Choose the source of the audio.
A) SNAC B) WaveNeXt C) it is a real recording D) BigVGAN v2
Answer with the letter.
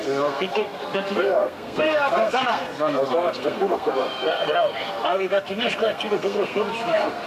A